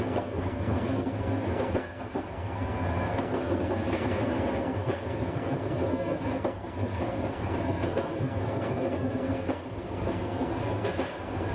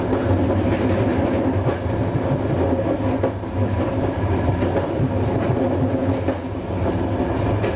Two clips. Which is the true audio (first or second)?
second